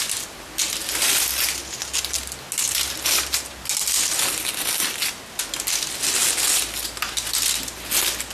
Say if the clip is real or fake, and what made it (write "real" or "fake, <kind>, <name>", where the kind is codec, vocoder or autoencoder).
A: real